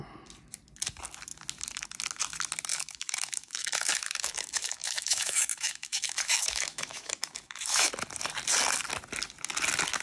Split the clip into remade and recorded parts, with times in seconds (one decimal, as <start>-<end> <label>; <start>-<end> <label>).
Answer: 0.0-2.7 recorded; 2.7-7.9 remade; 7.9-10.0 recorded